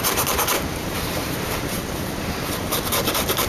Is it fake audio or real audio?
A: fake